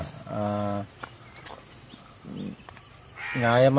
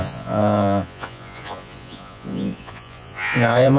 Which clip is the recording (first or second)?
first